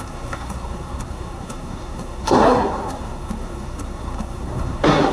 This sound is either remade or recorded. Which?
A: remade